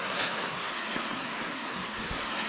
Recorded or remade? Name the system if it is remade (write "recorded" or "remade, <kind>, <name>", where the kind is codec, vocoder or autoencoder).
remade, codec, SNAC